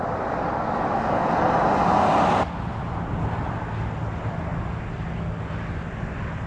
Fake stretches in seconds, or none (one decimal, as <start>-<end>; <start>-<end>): none